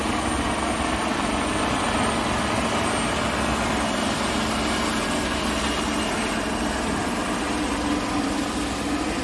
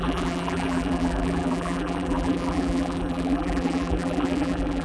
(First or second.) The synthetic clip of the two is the second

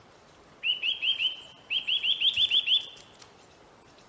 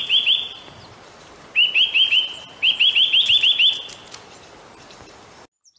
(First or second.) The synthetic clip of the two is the first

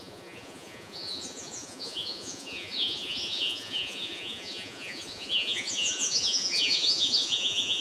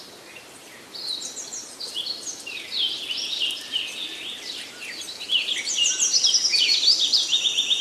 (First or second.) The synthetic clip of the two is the first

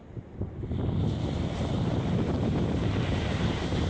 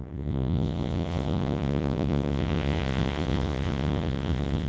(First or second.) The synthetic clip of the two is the second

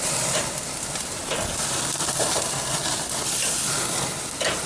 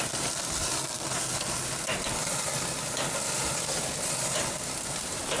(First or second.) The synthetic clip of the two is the first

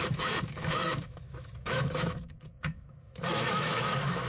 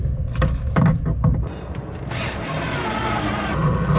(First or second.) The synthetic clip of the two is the first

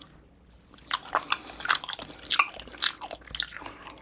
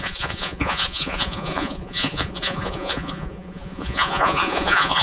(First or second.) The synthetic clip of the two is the second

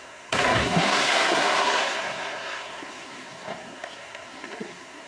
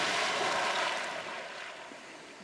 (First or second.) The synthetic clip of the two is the first